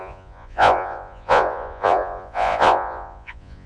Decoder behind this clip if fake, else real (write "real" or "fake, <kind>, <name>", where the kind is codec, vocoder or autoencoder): fake, vocoder, Vocos